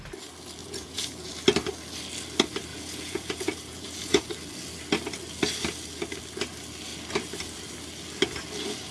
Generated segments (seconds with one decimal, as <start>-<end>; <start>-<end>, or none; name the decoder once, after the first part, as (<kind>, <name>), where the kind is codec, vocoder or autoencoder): 0.6-1.3 (vocoder, Vocos); 2.7-4.3